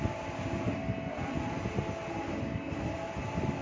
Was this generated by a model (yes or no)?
no